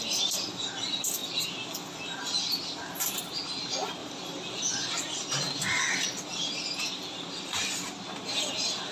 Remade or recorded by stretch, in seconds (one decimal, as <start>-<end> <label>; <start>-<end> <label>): 0.0-4.0 recorded; 4.0-4.6 remade; 4.6-8.9 recorded